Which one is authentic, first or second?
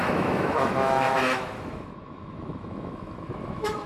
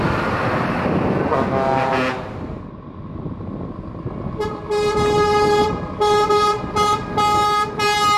second